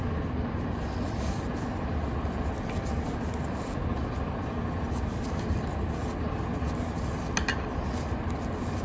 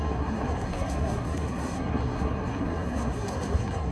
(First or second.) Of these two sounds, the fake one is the second